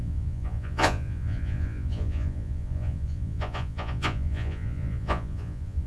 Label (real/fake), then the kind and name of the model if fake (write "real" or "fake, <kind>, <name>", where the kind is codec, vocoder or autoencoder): fake, vocoder, Vocos